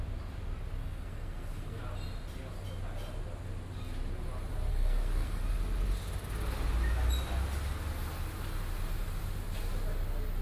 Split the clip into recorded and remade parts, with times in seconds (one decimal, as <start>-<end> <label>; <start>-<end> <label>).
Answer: 0.0-0.8 recorded; 0.8-1.8 remade; 1.8-4.7 recorded; 4.7-5.4 remade; 5.4-10.4 recorded